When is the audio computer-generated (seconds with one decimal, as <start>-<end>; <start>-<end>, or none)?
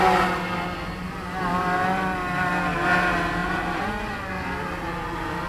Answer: 3.4-4.1